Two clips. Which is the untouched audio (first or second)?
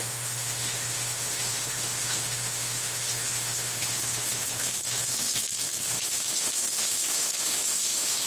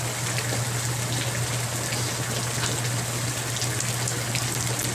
second